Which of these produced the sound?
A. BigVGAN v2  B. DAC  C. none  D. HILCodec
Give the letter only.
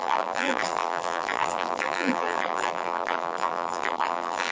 A